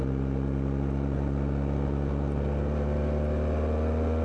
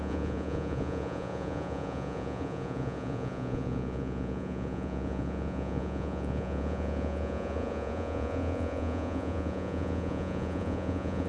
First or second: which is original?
first